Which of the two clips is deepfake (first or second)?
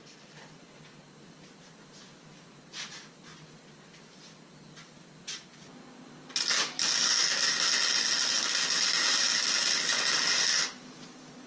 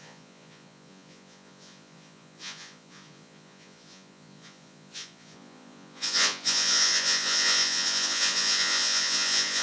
second